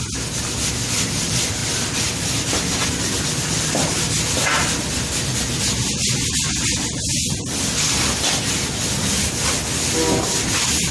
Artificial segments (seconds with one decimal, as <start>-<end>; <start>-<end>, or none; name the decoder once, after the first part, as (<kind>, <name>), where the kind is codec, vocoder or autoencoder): none